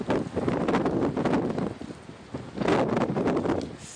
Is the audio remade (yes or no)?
no